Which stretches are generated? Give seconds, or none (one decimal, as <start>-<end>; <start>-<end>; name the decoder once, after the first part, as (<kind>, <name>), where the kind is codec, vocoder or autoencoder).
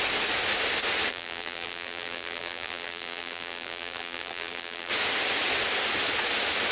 1.1-4.9 (vocoder, BigVGAN v2)